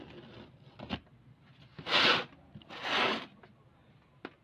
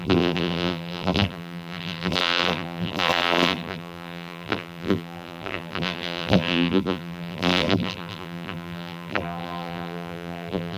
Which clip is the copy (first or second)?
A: second